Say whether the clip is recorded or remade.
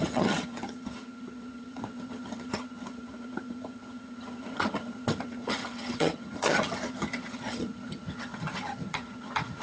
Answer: remade